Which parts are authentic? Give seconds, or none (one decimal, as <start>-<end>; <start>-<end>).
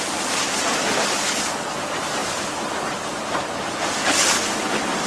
0.0-5.1